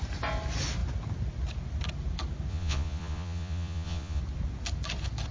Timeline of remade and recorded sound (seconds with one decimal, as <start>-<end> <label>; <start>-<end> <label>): 0.0-2.5 recorded; 2.5-4.2 remade; 4.2-5.3 recorded